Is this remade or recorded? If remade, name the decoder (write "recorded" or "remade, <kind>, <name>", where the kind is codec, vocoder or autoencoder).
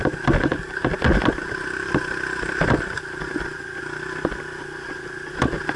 recorded